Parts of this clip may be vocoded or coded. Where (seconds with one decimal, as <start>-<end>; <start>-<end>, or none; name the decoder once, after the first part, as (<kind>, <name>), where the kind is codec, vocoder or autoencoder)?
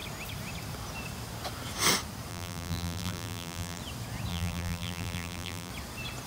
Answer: 2.3-3.8 (vocoder, BigVGAN v2); 4.3-5.7